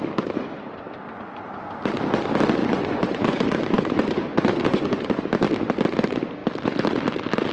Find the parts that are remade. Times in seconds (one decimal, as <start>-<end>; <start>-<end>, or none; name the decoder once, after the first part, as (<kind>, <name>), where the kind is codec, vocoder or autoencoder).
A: 2.6-5.2 (vocoder, Vocos)